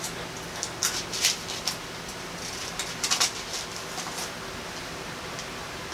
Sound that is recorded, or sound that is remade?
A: recorded